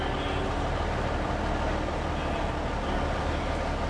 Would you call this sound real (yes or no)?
yes